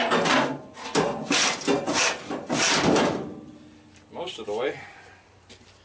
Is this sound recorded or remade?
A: recorded